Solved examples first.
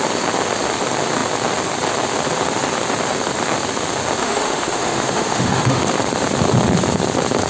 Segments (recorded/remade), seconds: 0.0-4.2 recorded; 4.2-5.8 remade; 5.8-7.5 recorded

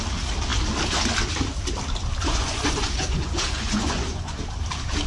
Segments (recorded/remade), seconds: 0.0-2.2 recorded; 2.2-4.4 remade; 4.4-5.1 recorded

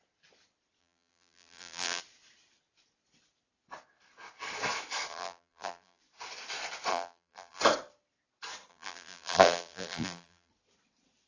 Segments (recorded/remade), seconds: 0.0-0.8 recorded; 0.8-2.0 remade; 2.0-5.1 recorded; 5.1-6.0 remade; 6.0-6.9 recorded; 6.9-7.6 remade; 7.6-8.7 recorded; 8.7-10.5 remade; 10.5-11.3 recorded

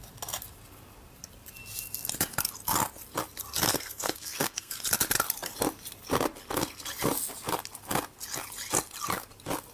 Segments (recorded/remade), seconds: 0.0-3.7 recorded; 3.7-4.7 remade; 4.7-9.7 recorded

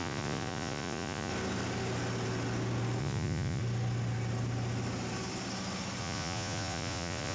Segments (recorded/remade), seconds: 0.0-1.3 remade; 1.3-3.0 recorded; 3.0-3.6 remade; 3.6-6.0 recorded; 6.0-7.3 remade

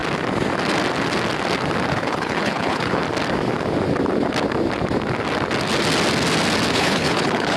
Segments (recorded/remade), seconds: 0.0-1.9 recorded; 1.9-3.0 remade; 3.0-6.7 recorded; 6.7-7.6 remade